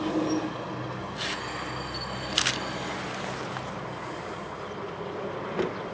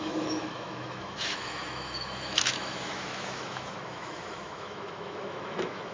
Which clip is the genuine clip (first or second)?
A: first